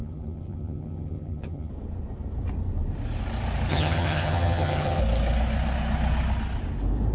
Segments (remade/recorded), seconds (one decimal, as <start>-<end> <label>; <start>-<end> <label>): 0.0-1.7 remade; 1.7-3.7 recorded; 3.7-5.0 remade; 5.0-7.1 recorded